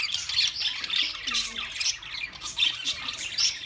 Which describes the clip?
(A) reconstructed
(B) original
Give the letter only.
B